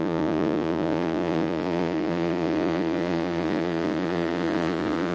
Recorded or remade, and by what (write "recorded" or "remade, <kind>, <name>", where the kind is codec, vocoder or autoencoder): remade, vocoder, Vocos